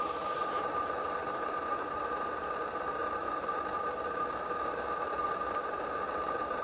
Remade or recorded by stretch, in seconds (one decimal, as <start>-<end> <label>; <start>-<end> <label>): 0.0-1.2 recorded; 1.2-2.2 remade; 2.2-6.6 recorded